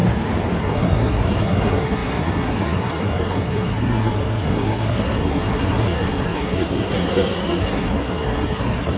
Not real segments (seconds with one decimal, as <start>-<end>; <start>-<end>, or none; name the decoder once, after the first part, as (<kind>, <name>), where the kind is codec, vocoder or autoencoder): 0.6-9.0 (codec, SNAC)